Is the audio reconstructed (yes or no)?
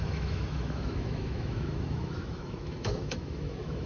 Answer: yes